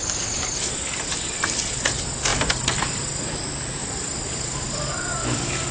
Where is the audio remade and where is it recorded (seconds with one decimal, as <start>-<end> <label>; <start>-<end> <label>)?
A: 0.0-2.3 recorded; 2.3-4.9 remade; 4.9-5.7 recorded